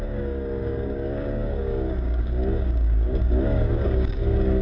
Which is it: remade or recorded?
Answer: remade